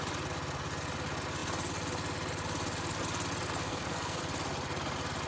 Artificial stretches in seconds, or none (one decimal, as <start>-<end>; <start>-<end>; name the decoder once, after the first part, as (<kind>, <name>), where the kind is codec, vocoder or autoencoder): 3.7-4.2 (codec, SNAC)